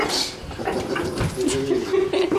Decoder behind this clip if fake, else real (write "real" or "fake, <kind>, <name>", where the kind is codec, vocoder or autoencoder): real